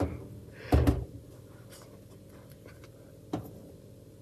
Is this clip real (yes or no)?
yes